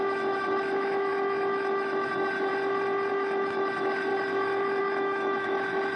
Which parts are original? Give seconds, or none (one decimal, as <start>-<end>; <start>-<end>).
2.5-3.1; 4.1-4.8